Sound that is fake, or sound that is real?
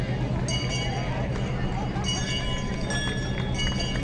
real